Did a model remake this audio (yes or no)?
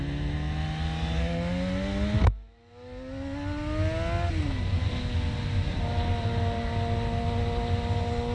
no